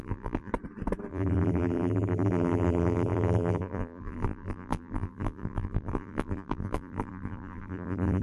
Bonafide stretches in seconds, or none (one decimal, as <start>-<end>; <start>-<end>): 0.5-1.1